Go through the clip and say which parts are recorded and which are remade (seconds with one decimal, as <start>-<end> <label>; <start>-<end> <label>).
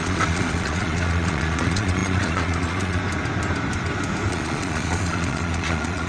0.0-3.0 remade; 3.0-4.3 recorded; 4.3-6.1 remade